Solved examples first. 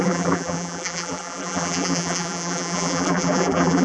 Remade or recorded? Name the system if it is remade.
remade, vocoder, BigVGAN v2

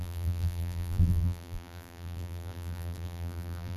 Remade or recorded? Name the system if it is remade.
remade, vocoder, BigVGAN v2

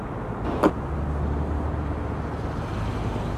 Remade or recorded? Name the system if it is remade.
recorded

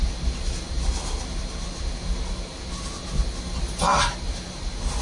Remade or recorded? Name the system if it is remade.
recorded